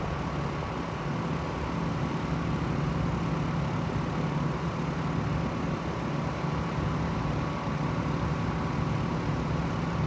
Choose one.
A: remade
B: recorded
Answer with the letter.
B